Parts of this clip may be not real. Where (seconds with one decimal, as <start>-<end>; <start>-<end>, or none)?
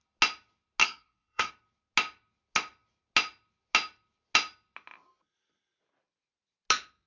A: 0.8-1.5